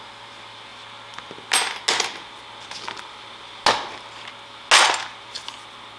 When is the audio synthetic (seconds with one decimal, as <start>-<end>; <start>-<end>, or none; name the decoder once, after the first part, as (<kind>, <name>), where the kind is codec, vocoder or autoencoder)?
none